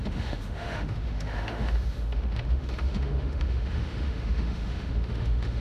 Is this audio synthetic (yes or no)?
yes